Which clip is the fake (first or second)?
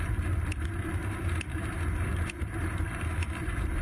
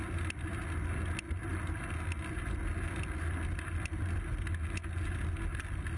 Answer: first